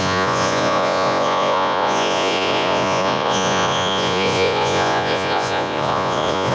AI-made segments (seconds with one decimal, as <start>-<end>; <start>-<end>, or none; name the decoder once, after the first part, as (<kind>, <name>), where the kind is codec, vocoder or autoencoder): 0.0-6.5 (vocoder, Vocos)

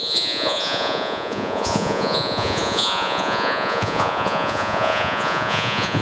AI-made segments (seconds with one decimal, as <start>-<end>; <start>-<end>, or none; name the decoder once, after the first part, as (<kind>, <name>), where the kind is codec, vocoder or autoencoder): 0.0-6.0 (vocoder, Vocos)

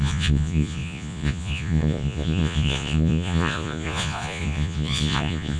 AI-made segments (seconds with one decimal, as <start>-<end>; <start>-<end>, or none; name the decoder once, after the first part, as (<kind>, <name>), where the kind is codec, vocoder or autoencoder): 0.0-5.6 (vocoder, Vocos)

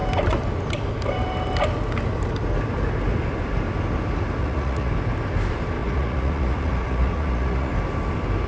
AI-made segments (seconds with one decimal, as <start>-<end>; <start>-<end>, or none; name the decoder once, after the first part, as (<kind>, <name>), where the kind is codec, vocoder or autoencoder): 4.4-4.9 (vocoder, Vocos); 5.8-7.7

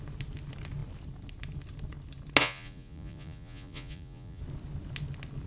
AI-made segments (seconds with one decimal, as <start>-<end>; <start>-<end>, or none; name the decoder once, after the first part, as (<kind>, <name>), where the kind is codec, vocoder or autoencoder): 2.4-4.4 (vocoder, Vocos)

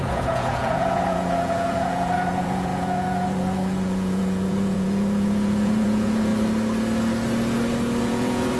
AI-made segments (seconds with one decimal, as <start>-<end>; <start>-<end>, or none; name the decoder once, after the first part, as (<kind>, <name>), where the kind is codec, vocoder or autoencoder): 0.0-6.3 (vocoder, Vocos); 8.0-8.6

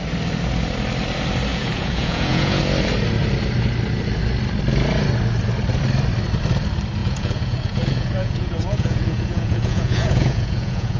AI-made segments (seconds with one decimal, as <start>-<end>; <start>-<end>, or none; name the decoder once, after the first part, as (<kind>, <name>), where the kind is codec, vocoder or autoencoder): 1.5-2.6 (vocoder, Vocos); 7.0-11.0

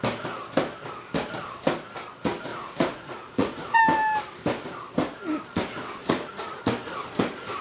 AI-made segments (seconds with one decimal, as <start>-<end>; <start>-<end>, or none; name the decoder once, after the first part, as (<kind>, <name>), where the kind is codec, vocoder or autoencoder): 2.5-3.8 (vocoder, Vocos); 6.0-6.6